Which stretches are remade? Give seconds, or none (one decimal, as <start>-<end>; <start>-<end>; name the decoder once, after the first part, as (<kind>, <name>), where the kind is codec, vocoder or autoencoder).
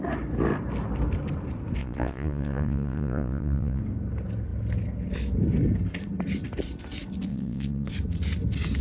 1.8-3.8 (vocoder, Vocos); 7.3-7.9